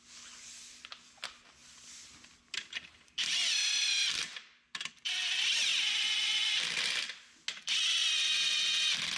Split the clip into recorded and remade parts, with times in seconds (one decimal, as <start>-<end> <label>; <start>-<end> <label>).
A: 0.0-8.0 recorded; 8.0-8.6 remade; 8.6-9.2 recorded